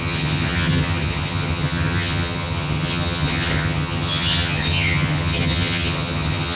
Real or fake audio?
fake